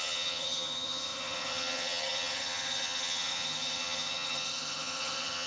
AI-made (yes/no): yes